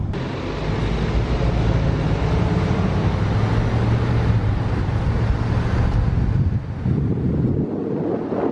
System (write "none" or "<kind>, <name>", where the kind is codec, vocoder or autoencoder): none